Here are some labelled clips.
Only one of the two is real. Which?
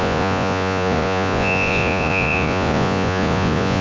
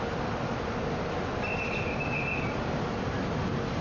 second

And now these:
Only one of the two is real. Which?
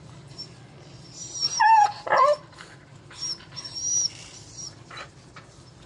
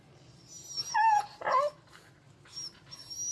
second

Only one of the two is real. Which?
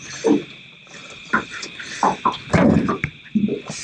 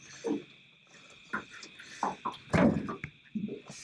second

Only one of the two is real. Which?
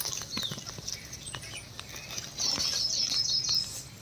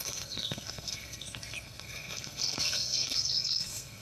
first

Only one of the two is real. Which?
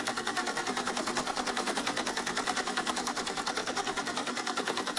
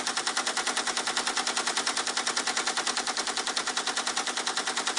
second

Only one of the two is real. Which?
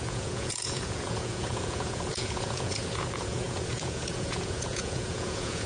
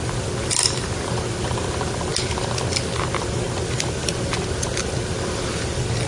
second